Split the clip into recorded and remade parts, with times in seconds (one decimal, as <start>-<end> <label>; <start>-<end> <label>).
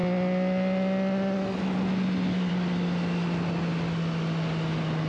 0.0-5.1 recorded